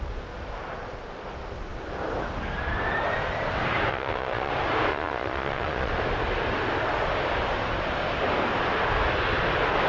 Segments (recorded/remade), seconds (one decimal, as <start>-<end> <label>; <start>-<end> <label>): 0.0-3.9 recorded; 3.9-4.5 remade; 4.5-4.9 recorded; 4.9-5.9 remade; 5.9-9.9 recorded